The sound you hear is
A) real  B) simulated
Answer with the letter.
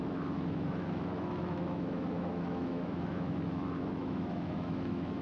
B